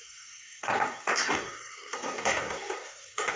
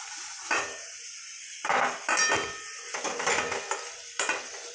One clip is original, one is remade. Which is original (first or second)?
second